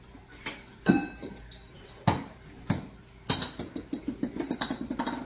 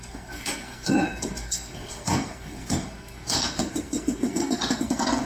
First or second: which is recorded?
first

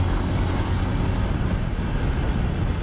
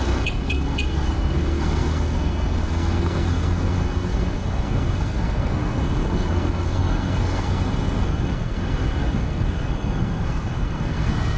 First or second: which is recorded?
first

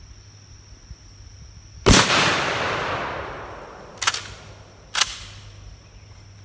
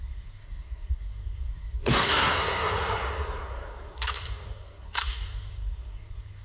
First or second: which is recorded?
first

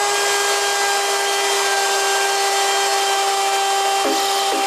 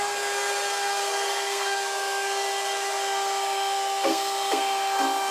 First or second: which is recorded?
first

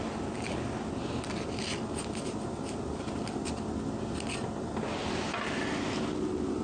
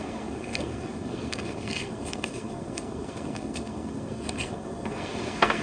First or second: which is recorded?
first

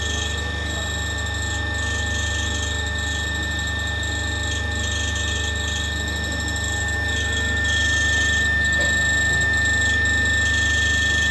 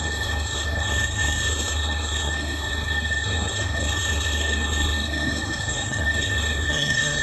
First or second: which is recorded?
first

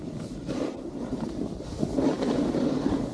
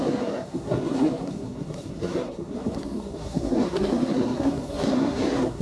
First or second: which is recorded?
first